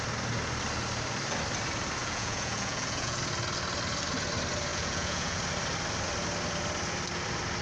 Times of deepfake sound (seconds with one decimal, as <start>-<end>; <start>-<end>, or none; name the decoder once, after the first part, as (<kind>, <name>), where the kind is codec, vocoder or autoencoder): 2.0-3.2 (vocoder, Vocos); 4.7-5.4